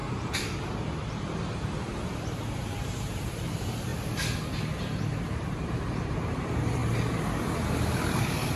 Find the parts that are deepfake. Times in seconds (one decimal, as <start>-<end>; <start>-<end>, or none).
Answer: 1.1-3.9; 5.0-6.8; 8.2-8.6